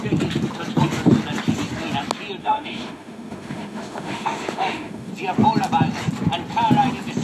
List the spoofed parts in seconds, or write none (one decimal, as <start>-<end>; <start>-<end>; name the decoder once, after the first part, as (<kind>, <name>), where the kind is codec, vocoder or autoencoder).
2.4-5.1 (autoencoder, DAC-VAE)